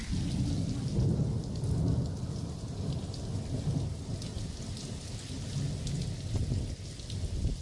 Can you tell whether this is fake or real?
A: real